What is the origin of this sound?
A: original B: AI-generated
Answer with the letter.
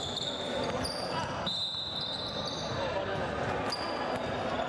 A